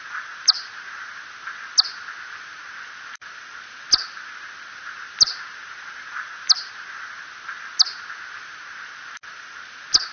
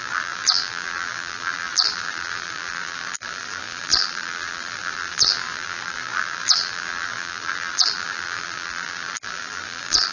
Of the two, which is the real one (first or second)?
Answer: first